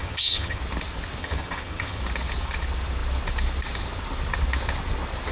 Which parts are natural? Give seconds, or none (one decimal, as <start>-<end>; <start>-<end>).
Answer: 0.6-1.2; 2.0-5.3